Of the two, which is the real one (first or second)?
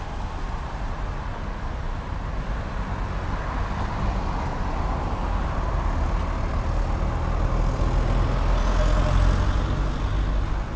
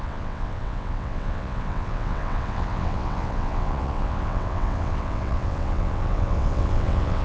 first